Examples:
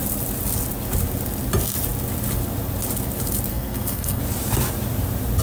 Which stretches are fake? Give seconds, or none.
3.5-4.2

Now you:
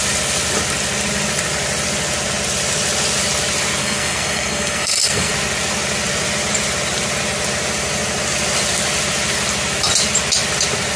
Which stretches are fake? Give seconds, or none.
3.8-5.3